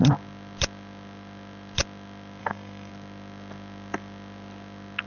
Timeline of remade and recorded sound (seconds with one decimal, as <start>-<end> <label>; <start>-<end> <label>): 0.0-2.4 recorded; 2.4-2.9 remade; 2.9-5.1 recorded